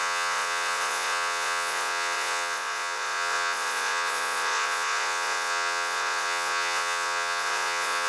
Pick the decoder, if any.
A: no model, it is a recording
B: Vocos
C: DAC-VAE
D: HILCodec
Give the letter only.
B